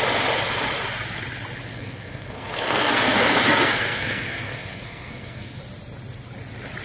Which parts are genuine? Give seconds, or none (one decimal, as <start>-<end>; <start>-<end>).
0.0-1.7; 5.6-6.8